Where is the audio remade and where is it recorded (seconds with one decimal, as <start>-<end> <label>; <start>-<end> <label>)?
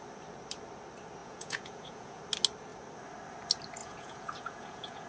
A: 0.0-1.2 recorded; 1.2-2.2 remade; 2.2-3.8 recorded; 3.8-5.1 remade